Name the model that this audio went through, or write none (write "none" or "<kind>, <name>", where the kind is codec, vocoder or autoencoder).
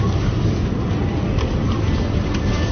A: none